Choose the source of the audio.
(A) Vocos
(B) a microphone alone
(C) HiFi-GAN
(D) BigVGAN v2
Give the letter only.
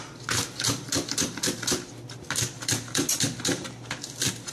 D